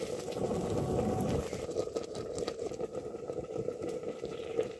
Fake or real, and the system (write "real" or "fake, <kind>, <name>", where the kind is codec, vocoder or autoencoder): fake, vocoder, BigVGAN v2